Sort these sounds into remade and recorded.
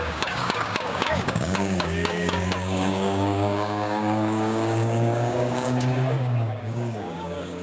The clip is remade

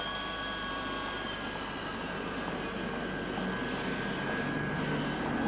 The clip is recorded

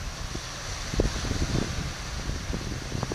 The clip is recorded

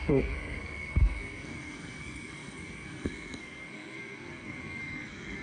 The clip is remade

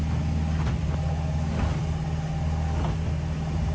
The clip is recorded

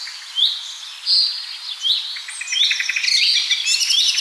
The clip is recorded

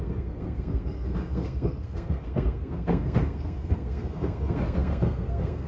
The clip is remade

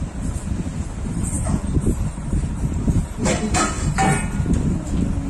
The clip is recorded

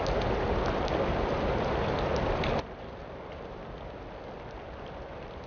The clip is remade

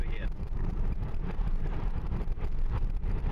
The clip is remade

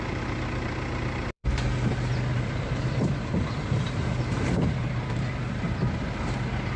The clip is remade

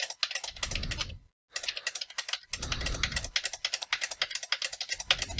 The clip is recorded